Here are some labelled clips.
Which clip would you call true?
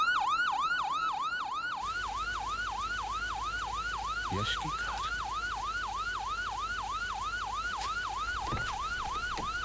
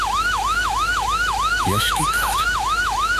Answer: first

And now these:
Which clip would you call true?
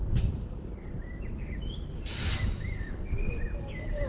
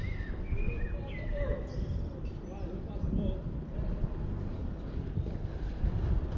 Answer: second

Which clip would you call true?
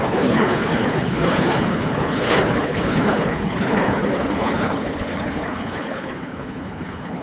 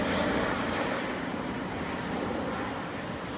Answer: second